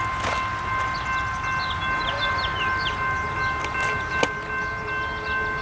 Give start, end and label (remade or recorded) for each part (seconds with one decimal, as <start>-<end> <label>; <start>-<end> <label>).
0.0-5.6 recorded